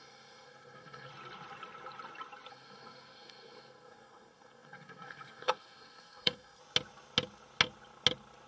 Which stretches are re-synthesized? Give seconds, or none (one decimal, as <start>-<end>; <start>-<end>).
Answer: 0.0-1.1; 2.5-6.6